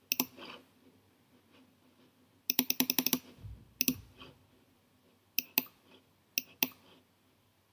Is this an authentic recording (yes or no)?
yes